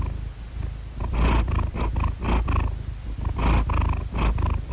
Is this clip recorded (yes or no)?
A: yes